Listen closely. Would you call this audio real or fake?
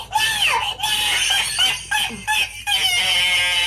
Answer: real